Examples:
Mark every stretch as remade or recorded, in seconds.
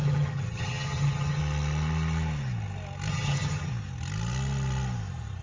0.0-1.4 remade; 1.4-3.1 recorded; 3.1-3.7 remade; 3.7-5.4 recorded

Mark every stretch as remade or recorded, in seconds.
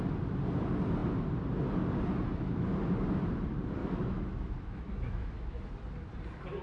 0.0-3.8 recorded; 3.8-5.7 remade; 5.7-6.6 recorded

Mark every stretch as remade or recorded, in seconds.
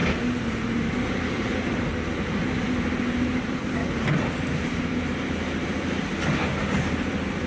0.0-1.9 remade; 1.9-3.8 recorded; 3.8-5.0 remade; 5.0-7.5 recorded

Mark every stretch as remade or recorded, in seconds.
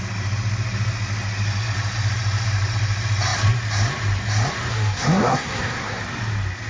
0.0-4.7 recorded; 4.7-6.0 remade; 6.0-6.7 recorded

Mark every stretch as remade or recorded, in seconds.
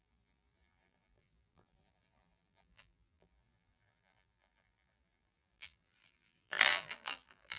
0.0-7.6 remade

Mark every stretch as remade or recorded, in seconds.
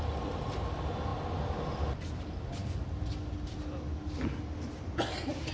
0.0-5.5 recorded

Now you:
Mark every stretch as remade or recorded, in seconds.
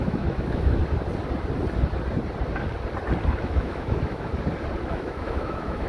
0.0-0.8 remade; 0.8-3.4 recorded; 3.4-4.3 remade; 4.3-4.8 recorded; 4.8-5.9 remade